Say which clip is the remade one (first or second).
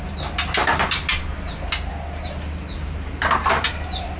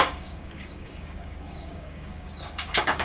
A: second